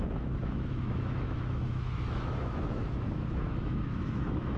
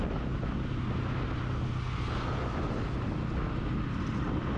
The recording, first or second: second